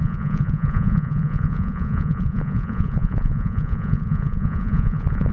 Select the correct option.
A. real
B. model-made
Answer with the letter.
B